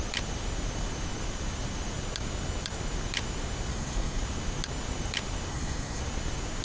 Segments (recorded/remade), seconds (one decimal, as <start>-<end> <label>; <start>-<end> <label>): 0.0-3.7 recorded; 3.7-4.2 remade; 4.2-5.5 recorded; 5.5-6.0 remade; 6.0-6.6 recorded